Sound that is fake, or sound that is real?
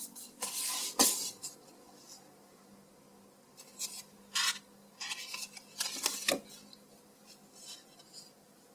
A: real